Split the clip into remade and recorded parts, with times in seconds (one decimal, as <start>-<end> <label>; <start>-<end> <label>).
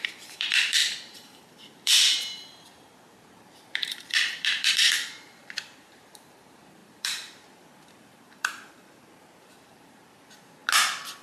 0.0-10.6 remade; 10.6-11.2 recorded